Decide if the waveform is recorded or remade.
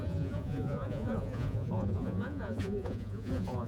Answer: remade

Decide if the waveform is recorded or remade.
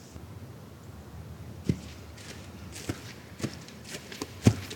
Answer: recorded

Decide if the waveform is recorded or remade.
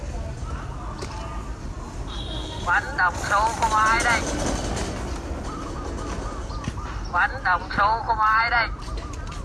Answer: recorded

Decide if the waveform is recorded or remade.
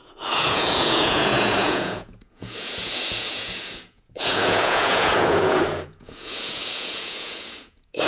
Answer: remade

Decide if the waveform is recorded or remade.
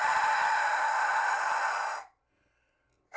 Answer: recorded